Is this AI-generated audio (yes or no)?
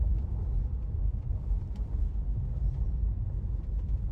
yes